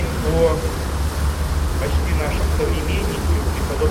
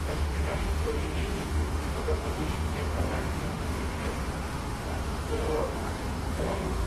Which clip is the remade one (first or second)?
second